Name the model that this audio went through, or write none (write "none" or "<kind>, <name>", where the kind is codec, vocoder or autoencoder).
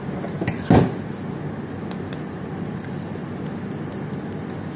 none